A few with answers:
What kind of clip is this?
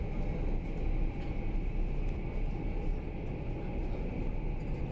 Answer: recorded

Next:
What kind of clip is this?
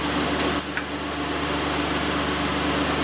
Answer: recorded